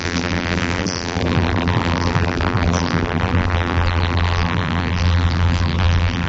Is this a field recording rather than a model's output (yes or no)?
no